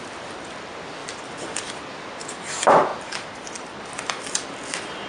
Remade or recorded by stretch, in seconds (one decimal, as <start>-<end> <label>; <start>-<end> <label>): 0.0-5.1 recorded